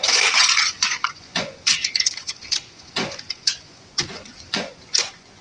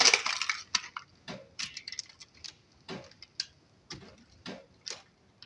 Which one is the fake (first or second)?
first